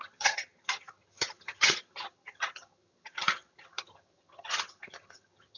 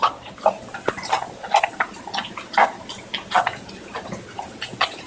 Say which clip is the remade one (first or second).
first